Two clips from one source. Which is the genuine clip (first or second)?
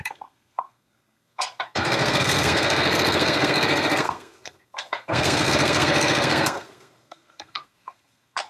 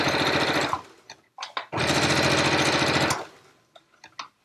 second